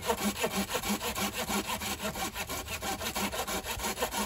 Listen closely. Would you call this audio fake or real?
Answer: real